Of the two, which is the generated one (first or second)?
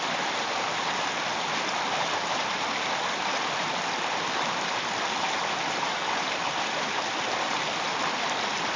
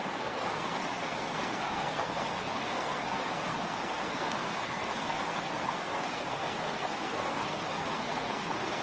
second